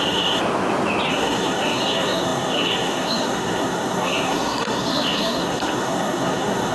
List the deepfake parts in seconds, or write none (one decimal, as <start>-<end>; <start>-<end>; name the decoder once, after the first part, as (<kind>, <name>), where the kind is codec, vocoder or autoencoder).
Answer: 0.0-0.4 (codec, SNAC); 1.1-6.7